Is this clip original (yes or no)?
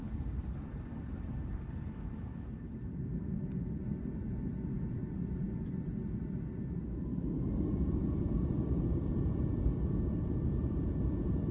no